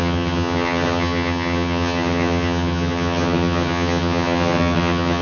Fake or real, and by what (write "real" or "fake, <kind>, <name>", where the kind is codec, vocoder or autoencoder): fake, vocoder, HiFi-GAN